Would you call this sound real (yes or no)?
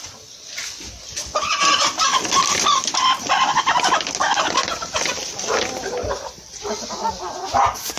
yes